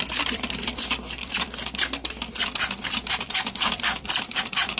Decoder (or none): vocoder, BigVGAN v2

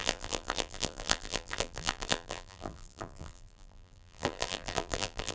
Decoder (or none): vocoder, BigVGAN v2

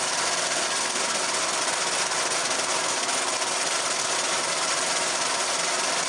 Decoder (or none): none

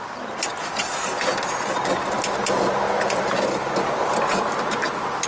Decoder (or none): none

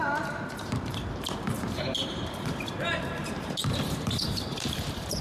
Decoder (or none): vocoder, BigVGAN v2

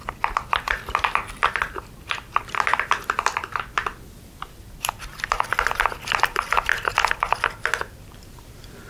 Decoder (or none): vocoder, BigVGAN v2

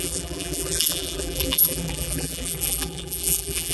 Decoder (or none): vocoder, BigVGAN v2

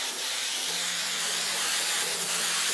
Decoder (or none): vocoder, BigVGAN v2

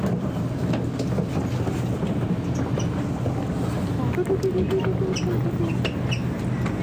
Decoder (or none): none